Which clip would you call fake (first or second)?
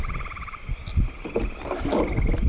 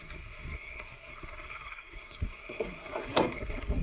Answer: second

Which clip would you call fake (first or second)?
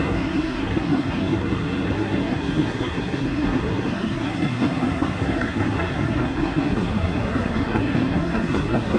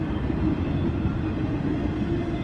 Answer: first